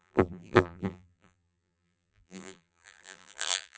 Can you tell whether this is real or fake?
fake